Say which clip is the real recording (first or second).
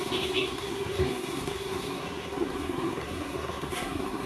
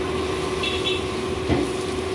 second